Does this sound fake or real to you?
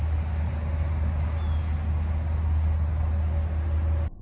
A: real